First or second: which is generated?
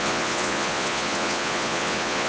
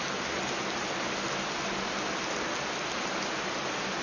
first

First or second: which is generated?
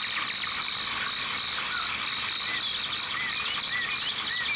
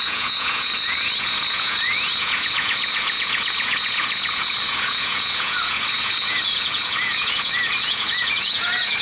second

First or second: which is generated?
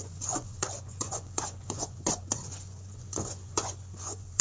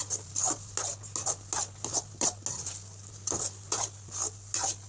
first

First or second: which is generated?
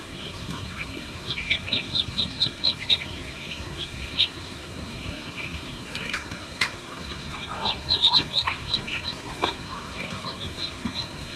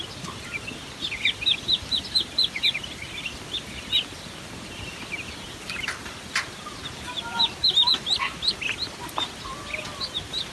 first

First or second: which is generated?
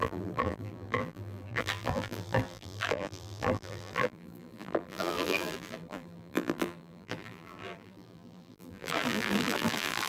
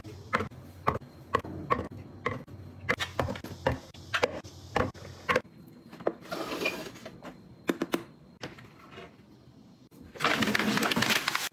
first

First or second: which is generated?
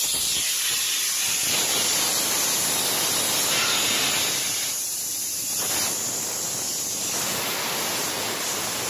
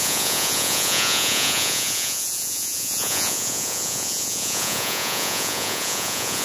second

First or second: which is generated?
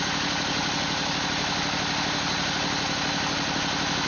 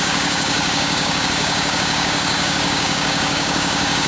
second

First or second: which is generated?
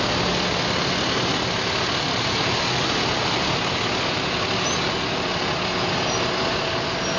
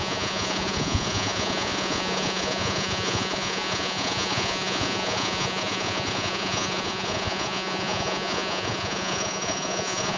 second